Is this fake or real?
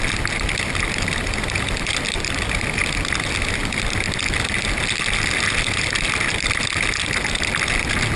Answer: real